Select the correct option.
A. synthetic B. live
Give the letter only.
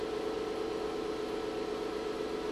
B